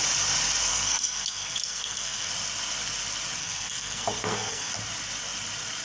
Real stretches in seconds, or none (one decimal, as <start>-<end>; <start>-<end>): 0.0-0.7; 2.3-3.4; 4.7-5.8